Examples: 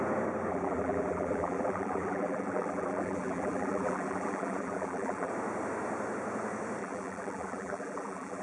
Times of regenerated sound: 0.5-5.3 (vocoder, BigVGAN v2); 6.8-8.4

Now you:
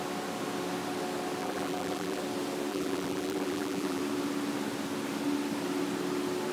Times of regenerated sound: 1.4-2.2 (vocoder, BigVGAN v2); 2.7-4.0